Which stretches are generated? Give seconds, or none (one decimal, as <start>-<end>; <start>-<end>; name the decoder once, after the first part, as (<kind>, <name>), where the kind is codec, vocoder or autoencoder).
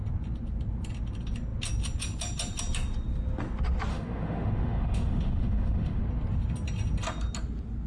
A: 3.9-6.0 (autoencoder, DAC-VAE)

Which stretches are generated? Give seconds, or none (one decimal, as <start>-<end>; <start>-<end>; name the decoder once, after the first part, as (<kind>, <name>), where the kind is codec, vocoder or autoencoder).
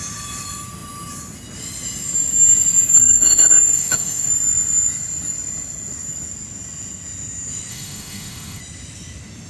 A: 3.0-4.3 (autoencoder, DAC-VAE); 7.7-8.6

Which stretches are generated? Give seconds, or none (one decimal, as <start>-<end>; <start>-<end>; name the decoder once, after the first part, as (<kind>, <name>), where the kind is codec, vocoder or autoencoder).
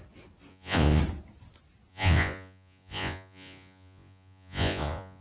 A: 0.5-1.0 (vocoder, Vocos); 1.9-5.2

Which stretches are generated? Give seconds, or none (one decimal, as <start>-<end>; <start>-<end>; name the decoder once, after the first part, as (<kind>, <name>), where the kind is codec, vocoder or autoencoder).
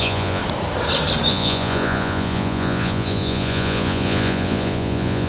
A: 0.0-0.4 (vocoder, Vocos); 1.3-5.3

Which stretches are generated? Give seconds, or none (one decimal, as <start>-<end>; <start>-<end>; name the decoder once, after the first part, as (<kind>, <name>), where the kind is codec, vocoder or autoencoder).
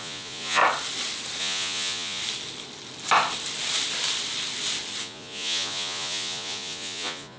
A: 0.0-0.6 (vocoder, Vocos); 1.4-2.2; 5.0-7.4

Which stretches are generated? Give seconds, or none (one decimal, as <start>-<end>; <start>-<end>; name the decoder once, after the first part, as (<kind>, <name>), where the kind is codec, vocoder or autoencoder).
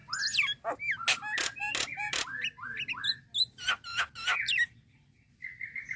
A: none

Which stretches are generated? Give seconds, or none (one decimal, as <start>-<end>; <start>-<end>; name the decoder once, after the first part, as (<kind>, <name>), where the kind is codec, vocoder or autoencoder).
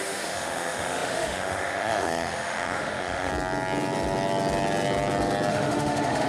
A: 0.0-3.3 (autoencoder, DAC-VAE); 5.5-6.3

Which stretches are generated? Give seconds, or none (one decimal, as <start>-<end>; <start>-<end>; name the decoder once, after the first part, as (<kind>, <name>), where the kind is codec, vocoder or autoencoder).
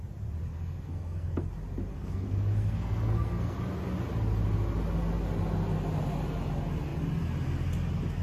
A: 0.5-1.5 (codec, SNAC); 1.9-3.6